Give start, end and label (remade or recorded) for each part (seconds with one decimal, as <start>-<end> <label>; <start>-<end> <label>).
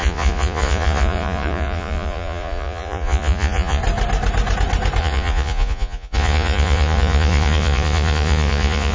0.0-3.8 remade; 3.8-5.0 recorded; 5.0-8.9 remade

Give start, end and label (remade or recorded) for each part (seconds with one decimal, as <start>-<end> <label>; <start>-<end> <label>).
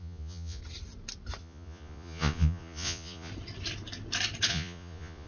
0.0-0.6 remade; 0.6-1.4 recorded; 1.4-3.3 remade; 3.3-4.5 recorded; 4.5-5.3 remade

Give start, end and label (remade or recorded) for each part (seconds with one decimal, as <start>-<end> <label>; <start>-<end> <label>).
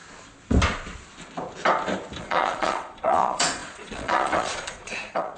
0.0-2.2 recorded; 2.2-5.4 remade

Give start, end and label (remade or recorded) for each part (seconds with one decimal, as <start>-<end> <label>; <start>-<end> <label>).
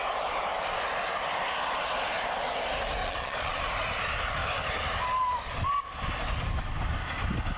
0.0-3.0 recorded; 3.0-3.6 remade; 3.6-7.6 recorded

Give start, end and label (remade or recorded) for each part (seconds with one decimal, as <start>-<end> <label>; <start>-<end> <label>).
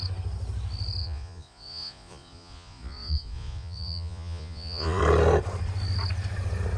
0.0-1.0 recorded; 1.0-5.0 remade; 5.0-6.8 recorded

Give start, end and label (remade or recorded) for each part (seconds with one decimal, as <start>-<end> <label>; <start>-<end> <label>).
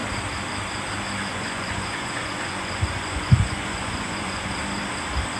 0.0-1.3 recorded; 1.3-4.5 remade; 4.5-5.4 recorded